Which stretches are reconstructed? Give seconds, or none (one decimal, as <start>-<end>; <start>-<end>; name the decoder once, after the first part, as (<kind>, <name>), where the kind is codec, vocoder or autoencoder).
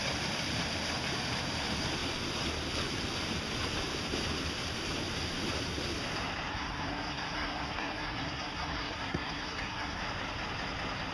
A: 6.5-10.0 (codec, SNAC)